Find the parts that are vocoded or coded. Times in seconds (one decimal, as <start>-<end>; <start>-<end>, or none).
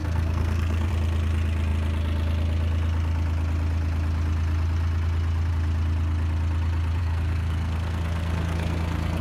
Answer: 0.0-0.9; 7.0-9.2